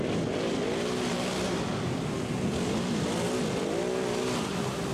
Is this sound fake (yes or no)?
no